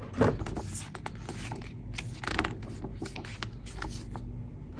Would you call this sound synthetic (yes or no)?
no